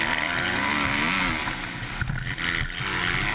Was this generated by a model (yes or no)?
no